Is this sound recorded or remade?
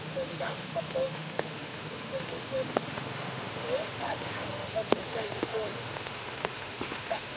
remade